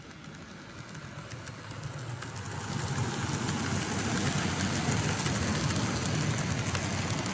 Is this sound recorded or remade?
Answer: recorded